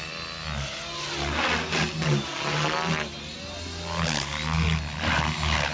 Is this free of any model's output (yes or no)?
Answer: yes